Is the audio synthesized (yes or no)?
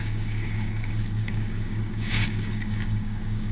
yes